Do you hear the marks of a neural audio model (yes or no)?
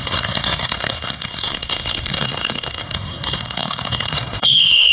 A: yes